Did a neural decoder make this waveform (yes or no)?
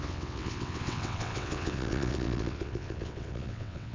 yes